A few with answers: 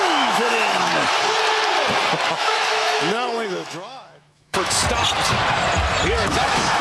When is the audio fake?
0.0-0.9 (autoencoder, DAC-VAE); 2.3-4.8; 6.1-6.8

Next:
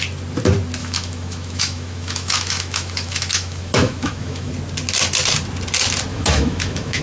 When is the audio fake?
0.8-4.5 (autoencoder, DAC-VAE); 6.1-7.0

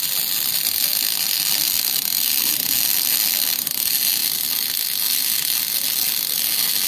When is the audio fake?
none

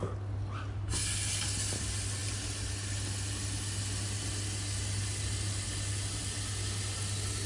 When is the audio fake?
none

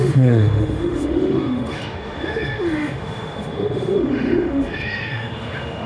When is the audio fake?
0.0-5.9 (autoencoder, DAC-VAE)

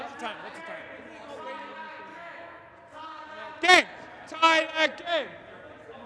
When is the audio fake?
2.1-2.7 (autoencoder, DAC-VAE)

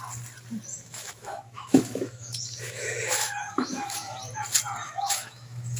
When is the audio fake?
0.7-4.2 (autoencoder, DAC-VAE); 4.8-5.8